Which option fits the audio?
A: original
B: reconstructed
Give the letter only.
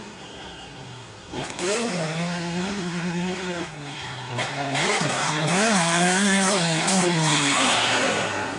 B